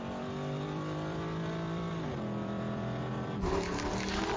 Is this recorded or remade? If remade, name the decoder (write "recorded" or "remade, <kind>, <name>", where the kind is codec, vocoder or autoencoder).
remade, vocoder, BigVGAN v2